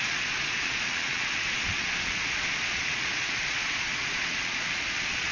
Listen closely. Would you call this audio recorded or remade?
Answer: remade